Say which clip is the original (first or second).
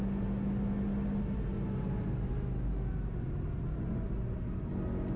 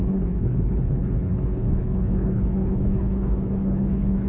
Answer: first